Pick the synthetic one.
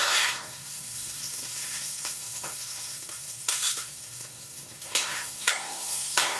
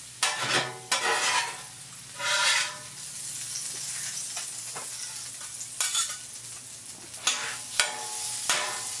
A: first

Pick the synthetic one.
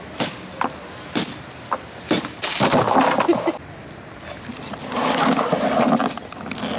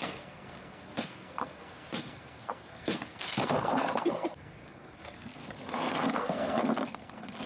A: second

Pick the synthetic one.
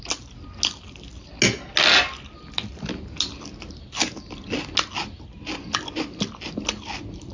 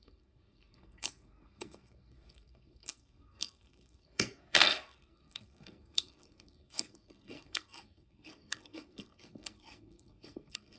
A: second